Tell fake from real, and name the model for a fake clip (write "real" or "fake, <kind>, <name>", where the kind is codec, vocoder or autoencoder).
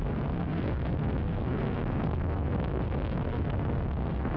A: fake, codec, SNAC